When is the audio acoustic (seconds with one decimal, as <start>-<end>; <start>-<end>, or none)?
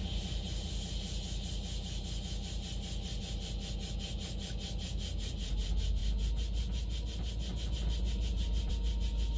0.0-9.4